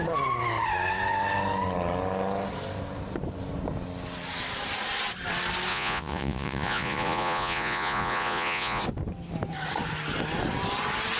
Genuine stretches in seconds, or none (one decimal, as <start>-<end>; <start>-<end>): 0.0-5.7; 8.8-11.2